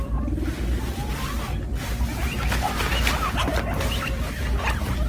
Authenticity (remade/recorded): recorded